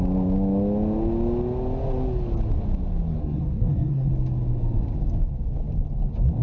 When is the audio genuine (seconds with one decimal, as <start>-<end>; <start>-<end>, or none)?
0.0-3.2; 4.1-6.4